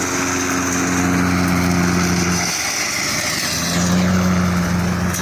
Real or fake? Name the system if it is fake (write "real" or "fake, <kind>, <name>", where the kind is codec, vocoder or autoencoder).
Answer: real